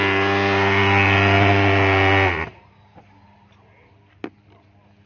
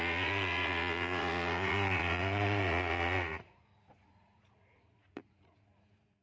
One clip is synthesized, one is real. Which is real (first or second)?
first